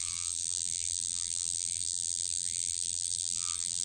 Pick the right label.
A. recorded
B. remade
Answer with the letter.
B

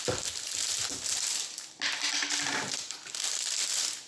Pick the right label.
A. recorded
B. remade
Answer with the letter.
A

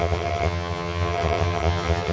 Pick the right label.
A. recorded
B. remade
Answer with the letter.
B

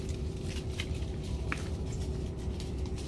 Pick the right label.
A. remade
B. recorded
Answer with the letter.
A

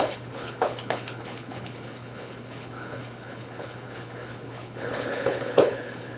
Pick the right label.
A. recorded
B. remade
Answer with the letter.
B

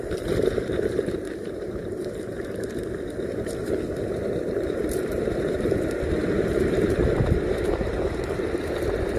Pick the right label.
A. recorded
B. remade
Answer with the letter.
B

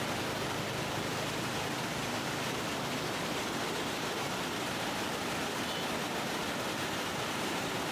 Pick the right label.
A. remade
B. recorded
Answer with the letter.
A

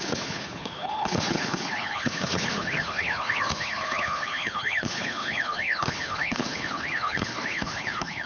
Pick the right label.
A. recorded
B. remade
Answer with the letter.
B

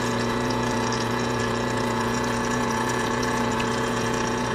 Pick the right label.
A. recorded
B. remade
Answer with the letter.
B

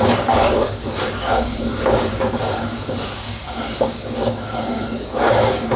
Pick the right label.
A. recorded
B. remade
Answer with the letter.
B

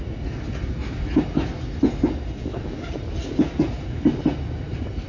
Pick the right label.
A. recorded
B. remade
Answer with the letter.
A